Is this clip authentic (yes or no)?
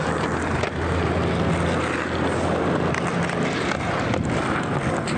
yes